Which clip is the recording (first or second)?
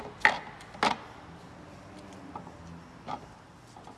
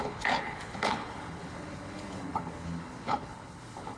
first